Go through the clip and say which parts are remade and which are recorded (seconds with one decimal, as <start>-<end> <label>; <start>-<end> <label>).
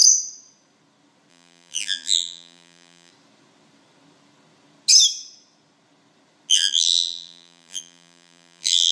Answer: 0.0-1.3 recorded; 1.3-3.1 remade; 3.1-6.5 recorded; 6.5-8.9 remade